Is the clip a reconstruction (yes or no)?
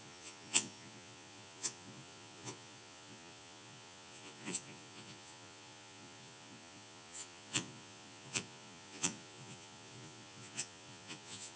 yes